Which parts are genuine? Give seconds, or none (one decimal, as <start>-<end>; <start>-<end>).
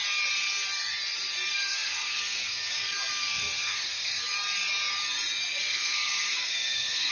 0.0-1.5; 4.2-5.6